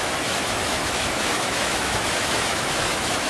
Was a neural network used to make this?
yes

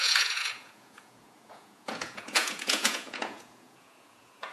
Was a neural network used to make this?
yes